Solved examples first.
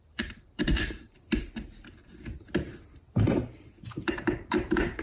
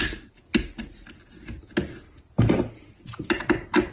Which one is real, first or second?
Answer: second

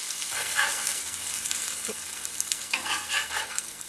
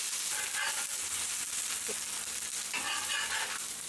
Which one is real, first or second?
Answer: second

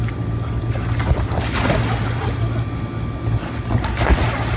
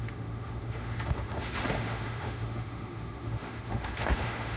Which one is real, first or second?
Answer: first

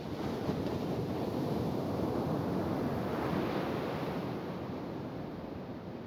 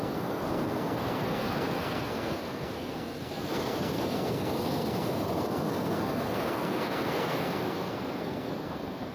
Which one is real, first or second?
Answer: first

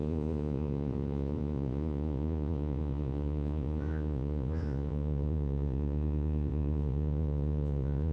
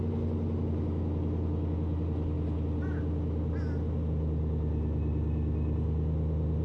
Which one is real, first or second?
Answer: second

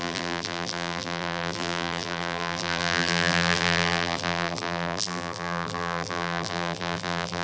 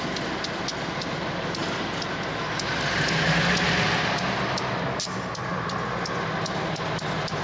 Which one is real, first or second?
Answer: second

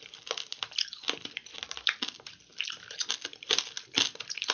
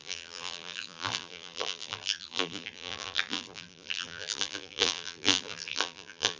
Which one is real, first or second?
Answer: first